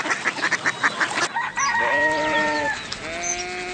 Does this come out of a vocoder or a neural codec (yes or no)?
no